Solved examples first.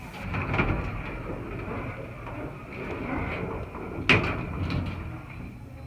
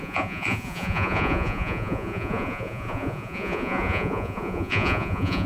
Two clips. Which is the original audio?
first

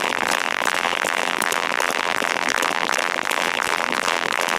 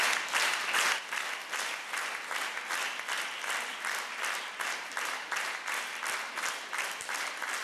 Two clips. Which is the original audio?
second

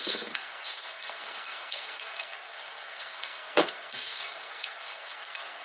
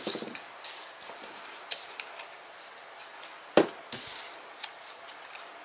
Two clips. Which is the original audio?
second